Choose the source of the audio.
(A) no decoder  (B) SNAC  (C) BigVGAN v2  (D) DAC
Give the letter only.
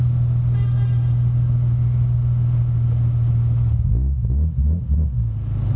A